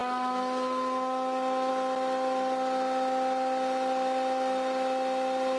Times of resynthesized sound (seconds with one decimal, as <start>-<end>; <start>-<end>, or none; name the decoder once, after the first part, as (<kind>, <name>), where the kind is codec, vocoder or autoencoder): 0.0-1.7 (autoencoder, DAC-VAE)